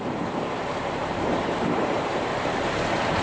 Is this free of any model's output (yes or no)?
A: no